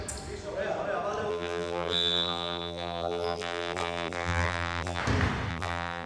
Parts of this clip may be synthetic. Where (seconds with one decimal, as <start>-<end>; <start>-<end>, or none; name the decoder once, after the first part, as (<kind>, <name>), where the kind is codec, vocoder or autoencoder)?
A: 1.3-5.0 (vocoder, BigVGAN v2); 5.5-6.1